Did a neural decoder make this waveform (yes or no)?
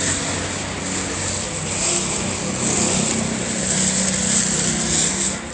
no